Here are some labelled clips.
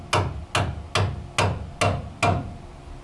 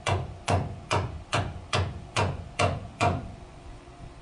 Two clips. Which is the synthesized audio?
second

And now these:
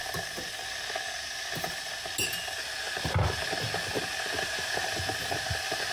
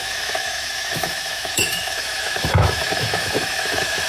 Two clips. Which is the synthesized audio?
second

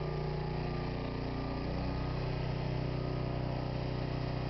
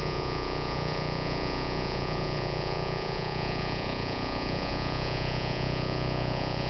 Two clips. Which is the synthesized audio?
second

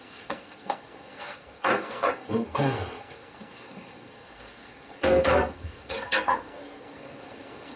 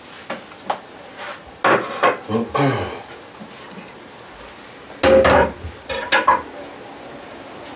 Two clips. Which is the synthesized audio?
first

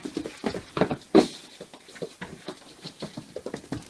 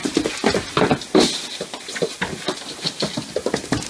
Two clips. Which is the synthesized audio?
first